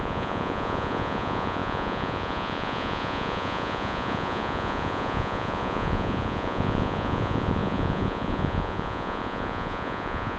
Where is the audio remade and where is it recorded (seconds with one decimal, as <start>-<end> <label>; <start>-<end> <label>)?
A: 0.0-10.4 remade